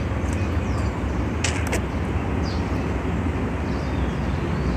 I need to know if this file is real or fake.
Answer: real